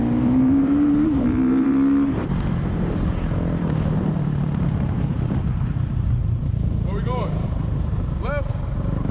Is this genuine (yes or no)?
no